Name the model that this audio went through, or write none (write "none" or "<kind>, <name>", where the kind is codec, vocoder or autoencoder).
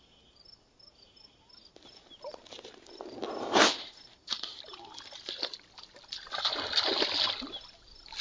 none